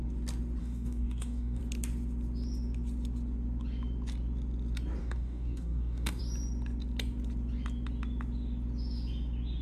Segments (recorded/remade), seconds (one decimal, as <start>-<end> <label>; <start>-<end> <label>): 0.0-0.6 recorded; 0.6-1.6 remade; 1.6-5.0 recorded; 5.0-6.2 remade; 6.2-9.6 recorded